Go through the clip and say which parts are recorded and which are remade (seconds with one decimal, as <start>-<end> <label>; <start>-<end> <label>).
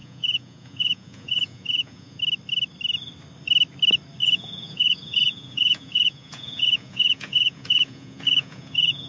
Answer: 0.0-2.2 remade; 2.2-4.2 recorded; 4.2-9.1 remade